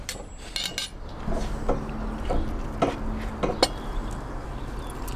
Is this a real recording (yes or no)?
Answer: yes